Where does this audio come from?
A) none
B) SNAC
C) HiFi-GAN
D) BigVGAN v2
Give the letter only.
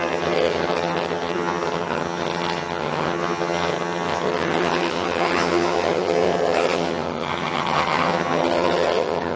C